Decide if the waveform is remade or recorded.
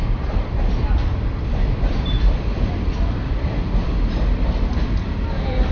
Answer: remade